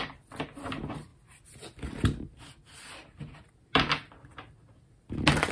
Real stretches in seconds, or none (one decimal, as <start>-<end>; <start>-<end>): 0.0-5.5